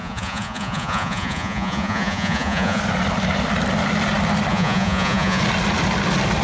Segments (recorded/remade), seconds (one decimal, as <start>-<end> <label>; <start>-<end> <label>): 0.0-2.8 remade; 2.8-4.5 recorded; 4.5-5.4 remade; 5.4-6.4 recorded